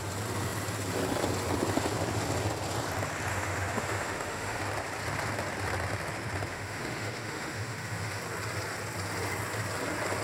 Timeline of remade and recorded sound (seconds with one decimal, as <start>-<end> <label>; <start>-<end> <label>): 0.0-3.3 recorded; 3.3-4.6 remade; 4.6-6.5 recorded; 6.5-8.2 remade; 8.2-10.2 recorded